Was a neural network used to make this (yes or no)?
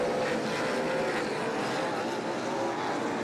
no